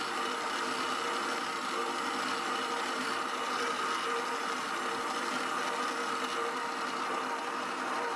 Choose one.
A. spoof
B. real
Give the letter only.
B